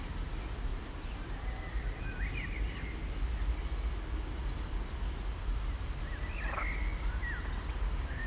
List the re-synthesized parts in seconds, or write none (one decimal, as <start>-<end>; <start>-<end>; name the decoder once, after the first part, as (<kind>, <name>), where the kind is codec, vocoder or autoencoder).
0.7-2.0 (vocoder, BigVGAN v2); 5.3-6.0; 6.9-8.3